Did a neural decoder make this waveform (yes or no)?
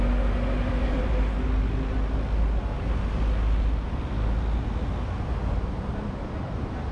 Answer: no